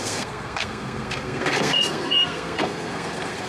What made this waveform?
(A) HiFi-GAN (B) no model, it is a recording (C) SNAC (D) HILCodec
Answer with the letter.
C